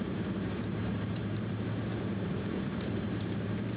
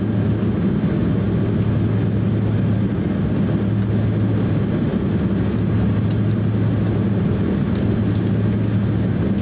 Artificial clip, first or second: first